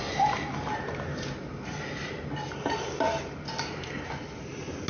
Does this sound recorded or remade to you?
recorded